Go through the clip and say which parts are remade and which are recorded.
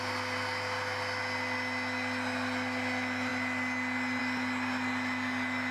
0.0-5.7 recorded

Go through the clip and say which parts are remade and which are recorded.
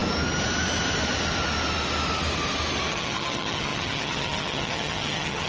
0.0-2.9 recorded; 2.9-5.5 remade